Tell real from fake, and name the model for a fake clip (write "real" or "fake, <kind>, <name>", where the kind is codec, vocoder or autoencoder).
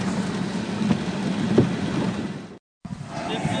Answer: real